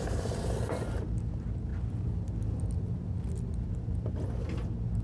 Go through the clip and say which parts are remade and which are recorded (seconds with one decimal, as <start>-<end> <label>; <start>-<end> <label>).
0.0-5.0 recorded